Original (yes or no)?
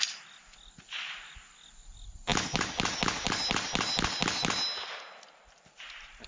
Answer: yes